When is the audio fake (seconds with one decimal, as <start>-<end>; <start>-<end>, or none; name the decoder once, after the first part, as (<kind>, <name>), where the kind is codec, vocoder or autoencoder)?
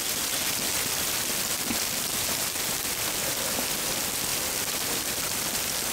4.3-5.3 (vocoder, BigVGAN v2)